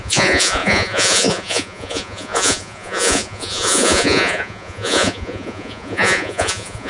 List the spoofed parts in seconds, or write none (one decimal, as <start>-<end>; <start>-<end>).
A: 0.0-6.9